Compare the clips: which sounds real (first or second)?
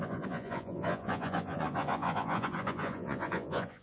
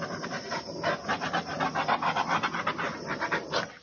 second